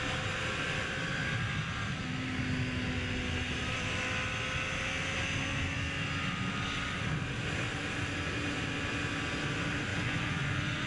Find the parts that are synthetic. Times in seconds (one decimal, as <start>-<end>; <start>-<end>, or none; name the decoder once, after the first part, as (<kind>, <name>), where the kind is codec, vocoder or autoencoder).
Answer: 9.9-10.9 (vocoder, Vocos)